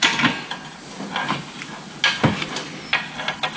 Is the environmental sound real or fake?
real